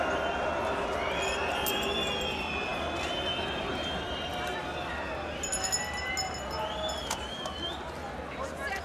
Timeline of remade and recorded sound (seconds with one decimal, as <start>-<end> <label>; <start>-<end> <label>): 0.0-8.8 recorded